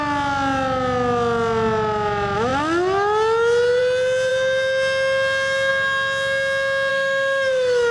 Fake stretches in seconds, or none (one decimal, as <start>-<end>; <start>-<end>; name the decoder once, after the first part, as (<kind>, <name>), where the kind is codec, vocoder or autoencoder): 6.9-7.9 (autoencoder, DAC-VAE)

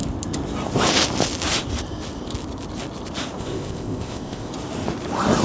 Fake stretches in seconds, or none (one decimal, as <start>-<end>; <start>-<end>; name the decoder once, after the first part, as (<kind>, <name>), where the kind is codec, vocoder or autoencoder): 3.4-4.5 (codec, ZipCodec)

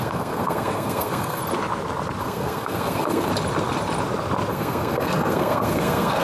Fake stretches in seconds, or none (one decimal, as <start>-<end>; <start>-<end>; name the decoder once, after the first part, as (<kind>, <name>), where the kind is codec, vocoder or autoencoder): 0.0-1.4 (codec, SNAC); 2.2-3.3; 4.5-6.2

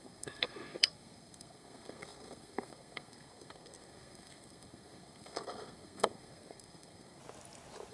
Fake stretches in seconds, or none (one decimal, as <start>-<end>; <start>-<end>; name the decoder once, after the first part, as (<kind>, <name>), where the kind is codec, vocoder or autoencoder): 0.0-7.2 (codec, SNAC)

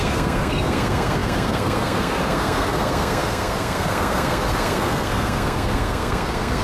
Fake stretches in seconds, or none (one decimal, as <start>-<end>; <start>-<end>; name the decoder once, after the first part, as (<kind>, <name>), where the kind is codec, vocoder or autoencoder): 0.0-6.6 (codec, SNAC)

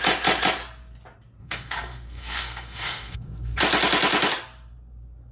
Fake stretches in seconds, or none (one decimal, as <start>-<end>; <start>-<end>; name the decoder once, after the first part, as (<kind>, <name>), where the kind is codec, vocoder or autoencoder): 1.4-3.6 (codec, SNAC)

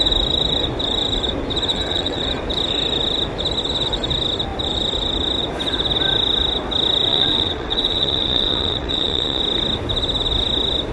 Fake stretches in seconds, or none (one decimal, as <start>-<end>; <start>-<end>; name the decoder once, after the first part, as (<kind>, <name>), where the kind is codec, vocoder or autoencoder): 1.7-2.2 (vocoder, WaveNeXt); 7.1-9.4